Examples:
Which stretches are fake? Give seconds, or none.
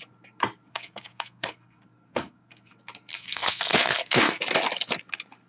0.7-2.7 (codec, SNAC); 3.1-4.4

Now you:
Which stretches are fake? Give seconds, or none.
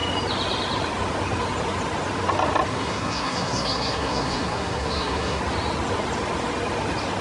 2.7-5.4 (codec, SNAC)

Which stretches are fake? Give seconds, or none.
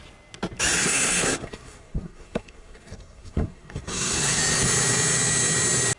0.8-4.4 (codec, SNAC)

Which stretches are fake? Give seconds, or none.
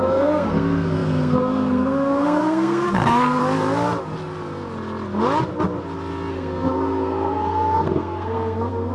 0.0-3.4 (codec, SNAC); 6.3-8.9